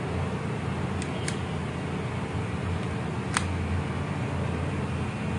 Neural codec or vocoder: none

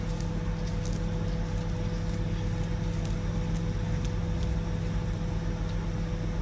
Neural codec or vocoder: none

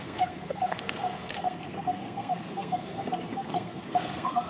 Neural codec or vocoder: codec, SNAC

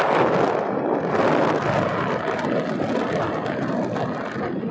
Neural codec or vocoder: none